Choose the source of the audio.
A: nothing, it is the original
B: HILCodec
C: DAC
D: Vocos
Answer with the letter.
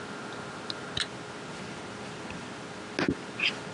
A